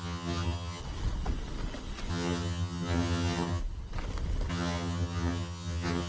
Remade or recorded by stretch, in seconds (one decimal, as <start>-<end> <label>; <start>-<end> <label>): 0.0-0.8 remade; 0.8-2.1 recorded; 2.1-3.6 remade; 3.6-4.5 recorded; 4.5-6.1 remade